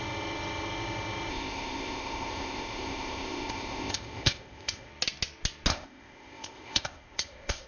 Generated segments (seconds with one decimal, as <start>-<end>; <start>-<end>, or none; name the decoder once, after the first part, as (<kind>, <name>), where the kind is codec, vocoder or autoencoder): 1.3-4.9 (codec, ZipCodec); 5.7-7.7